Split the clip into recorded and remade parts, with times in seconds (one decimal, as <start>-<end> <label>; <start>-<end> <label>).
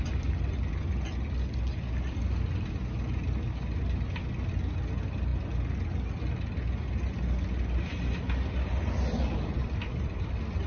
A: 0.0-10.7 recorded